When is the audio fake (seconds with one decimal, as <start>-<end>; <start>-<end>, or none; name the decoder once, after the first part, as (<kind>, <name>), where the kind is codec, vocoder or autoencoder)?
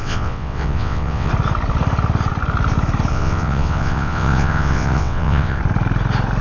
0.0-1.3 (vocoder, WaveNeXt); 3.1-5.6